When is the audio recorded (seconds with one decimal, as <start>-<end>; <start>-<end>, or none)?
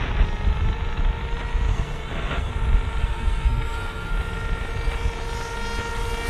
0.0-1.7; 2.5-3.0; 4.1-6.3